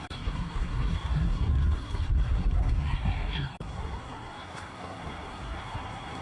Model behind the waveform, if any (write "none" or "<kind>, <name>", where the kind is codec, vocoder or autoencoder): codec, SNAC